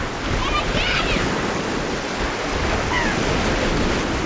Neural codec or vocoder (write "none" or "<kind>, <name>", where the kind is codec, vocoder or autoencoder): none